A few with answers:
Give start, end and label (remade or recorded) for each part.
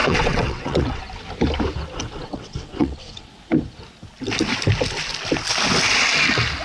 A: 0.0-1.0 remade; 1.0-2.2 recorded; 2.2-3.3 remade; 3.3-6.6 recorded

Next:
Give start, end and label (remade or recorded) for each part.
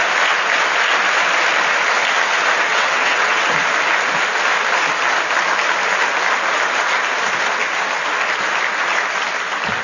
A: 0.0-2.7 recorded; 2.7-3.4 remade; 3.4-9.8 recorded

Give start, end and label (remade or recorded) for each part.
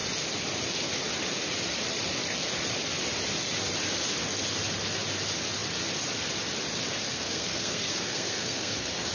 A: 0.0-7.1 recorded; 7.1-9.1 remade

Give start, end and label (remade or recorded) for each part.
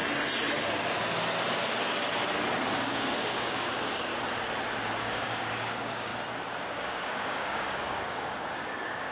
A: 0.0-2.7 recorded; 2.7-4.1 remade; 4.1-5.0 recorded; 5.0-6.1 remade; 6.1-6.7 recorded; 6.7-9.1 remade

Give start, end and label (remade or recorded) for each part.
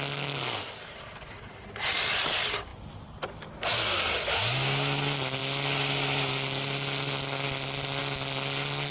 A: 0.0-8.9 recorded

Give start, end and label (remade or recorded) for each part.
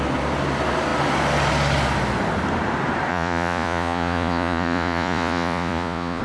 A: 0.0-3.1 recorded; 3.1-6.2 remade